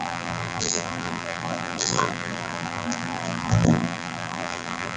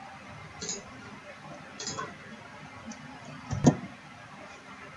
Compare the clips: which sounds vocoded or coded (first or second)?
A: first